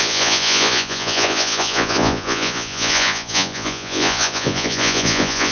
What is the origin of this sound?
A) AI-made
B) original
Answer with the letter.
A